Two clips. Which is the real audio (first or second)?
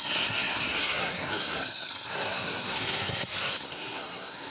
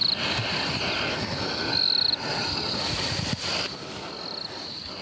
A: second